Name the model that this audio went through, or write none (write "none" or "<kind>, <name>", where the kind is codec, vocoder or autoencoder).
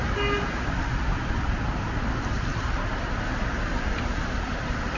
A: none